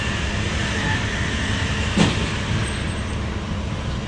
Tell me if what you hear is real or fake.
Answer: fake